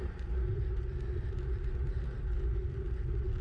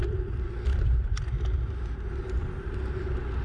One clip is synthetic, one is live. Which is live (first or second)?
first